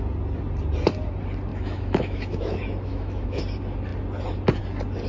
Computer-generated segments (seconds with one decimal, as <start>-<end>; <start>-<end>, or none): 1.5-3.4